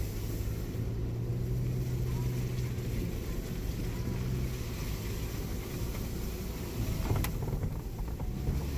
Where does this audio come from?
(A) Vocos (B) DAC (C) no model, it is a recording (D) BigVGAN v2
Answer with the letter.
C